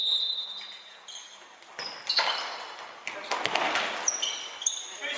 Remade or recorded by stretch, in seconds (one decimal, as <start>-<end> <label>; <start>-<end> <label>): 0.0-5.2 recorded